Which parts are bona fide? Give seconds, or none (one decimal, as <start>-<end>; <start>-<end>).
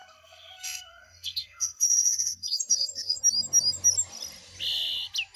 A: 3.2-5.4